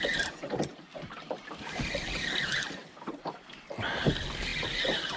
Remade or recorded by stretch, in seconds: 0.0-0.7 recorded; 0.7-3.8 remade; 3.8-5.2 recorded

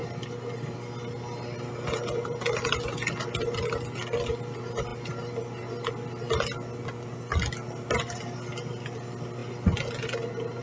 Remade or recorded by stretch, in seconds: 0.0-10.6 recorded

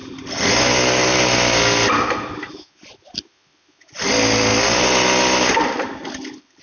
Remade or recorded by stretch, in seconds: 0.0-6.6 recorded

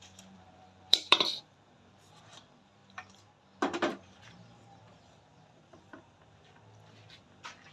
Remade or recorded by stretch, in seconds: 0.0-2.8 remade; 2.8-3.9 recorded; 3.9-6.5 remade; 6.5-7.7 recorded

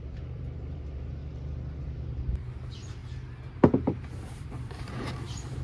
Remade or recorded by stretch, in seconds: 0.0-1.2 remade; 1.2-1.8 recorded; 1.8-3.0 remade; 3.0-4.3 recorded; 4.3-5.6 remade